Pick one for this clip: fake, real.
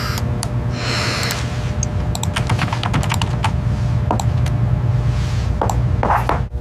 real